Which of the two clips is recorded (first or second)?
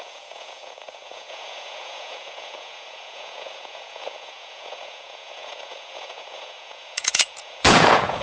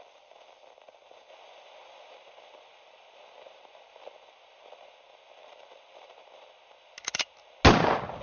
second